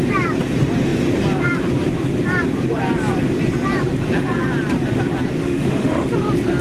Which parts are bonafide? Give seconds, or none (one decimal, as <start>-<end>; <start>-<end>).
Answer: 0.0-5.4; 6.1-6.6